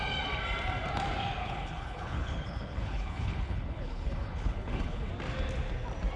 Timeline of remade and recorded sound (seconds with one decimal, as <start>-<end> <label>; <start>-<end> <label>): 0.0-1.4 recorded; 1.4-5.1 remade; 5.1-6.2 recorded